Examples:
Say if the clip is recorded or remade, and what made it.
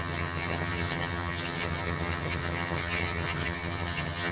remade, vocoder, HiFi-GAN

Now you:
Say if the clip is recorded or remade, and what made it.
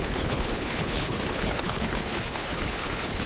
remade, codec, HILCodec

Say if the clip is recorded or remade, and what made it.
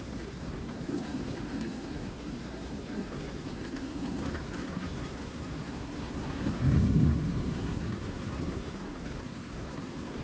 remade, codec, SNAC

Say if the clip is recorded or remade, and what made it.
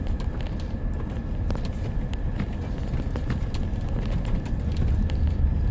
recorded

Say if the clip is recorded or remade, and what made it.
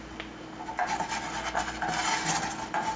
recorded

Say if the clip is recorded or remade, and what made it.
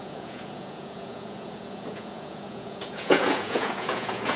remade, vocoder, Vocos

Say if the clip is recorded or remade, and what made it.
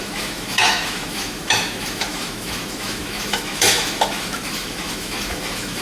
remade, autoencoder, DAC-VAE